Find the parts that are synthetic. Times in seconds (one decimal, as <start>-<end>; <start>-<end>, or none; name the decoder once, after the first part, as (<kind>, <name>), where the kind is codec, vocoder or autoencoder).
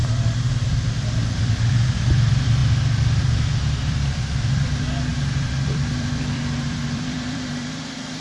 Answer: 0.0-8.2 (vocoder, BigVGAN v2)